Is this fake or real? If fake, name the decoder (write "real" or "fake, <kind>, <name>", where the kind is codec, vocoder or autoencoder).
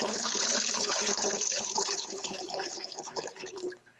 fake, codec, HILCodec